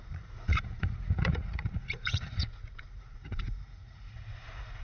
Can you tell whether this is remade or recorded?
remade